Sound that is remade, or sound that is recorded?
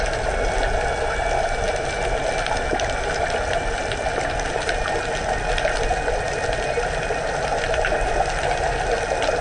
recorded